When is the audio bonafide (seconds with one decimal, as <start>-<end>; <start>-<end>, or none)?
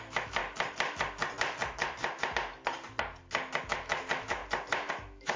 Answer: 0.4-3.6; 4.4-4.9